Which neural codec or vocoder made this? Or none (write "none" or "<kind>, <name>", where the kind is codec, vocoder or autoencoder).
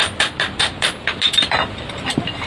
vocoder, BigVGAN v2